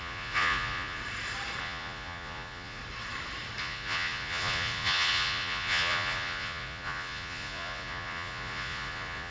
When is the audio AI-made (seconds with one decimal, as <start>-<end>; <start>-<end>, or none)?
0.0-1.0; 1.6-2.8; 3.6-9.3